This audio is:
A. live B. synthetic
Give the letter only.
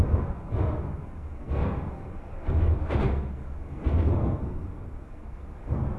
B